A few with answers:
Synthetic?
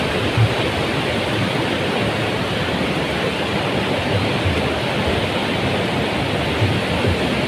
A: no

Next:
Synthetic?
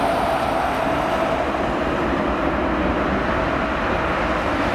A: no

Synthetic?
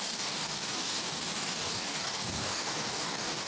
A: yes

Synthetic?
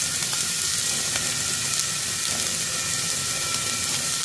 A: no